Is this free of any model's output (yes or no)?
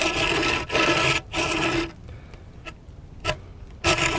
no